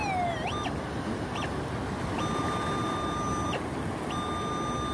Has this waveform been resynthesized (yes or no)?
no